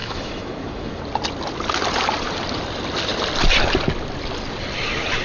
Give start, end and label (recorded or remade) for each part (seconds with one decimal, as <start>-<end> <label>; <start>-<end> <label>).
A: 0.0-1.0 remade; 1.0-5.2 recorded